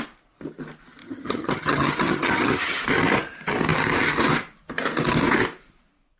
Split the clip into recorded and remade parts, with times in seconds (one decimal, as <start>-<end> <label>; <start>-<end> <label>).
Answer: 0.0-1.0 recorded; 1.0-2.8 remade; 2.8-6.2 recorded